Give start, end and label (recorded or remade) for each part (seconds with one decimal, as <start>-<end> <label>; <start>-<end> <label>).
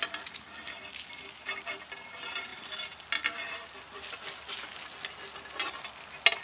0.0-6.4 recorded